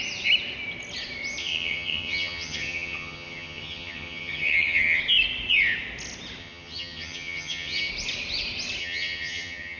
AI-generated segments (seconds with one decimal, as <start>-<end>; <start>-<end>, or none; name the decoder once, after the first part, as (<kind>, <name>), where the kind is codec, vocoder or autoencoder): 1.4-5.0 (vocoder, HiFi-GAN); 6.4-7.9; 8.8-9.8